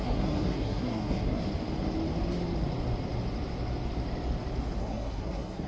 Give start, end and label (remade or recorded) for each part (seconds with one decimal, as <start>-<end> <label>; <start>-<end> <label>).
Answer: 0.0-1.4 remade; 1.4-4.8 recorded; 4.8-5.7 remade